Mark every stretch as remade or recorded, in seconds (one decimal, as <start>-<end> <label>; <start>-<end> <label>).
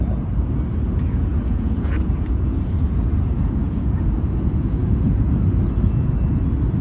0.0-1.3 recorded; 1.3-5.4 remade; 5.4-6.8 recorded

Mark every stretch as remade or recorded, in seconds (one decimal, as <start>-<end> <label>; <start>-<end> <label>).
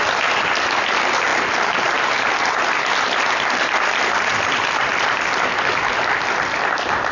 0.0-7.1 recorded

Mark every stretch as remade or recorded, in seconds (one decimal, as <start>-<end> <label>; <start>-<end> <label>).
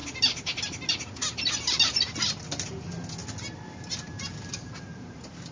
0.0-5.5 recorded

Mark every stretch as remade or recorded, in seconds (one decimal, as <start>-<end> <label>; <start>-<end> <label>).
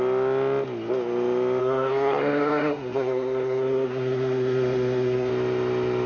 0.0-1.6 recorded; 1.6-5.3 remade; 5.3-6.1 recorded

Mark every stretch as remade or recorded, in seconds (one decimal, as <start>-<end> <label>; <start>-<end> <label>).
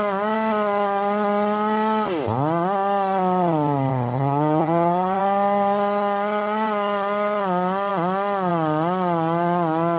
0.0-3.9 recorded; 3.9-5.2 remade; 5.2-10.0 recorded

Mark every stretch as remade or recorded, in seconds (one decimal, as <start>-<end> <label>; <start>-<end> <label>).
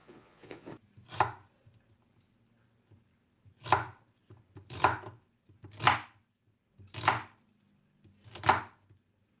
0.0-0.7 remade; 0.7-9.4 recorded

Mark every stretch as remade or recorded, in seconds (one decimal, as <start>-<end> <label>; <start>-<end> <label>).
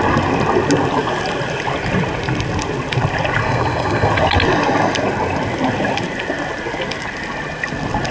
0.0-3.4 recorded; 3.4-4.1 remade; 4.1-8.1 recorded